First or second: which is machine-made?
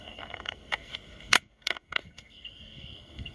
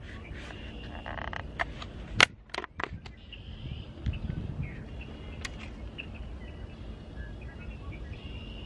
first